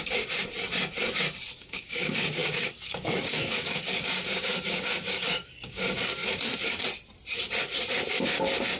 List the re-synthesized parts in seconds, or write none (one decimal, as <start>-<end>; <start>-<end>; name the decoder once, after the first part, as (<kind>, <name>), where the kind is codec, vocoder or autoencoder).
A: 0.0-0.4 (codec, DAC); 1.6-6.2; 8.1-8.8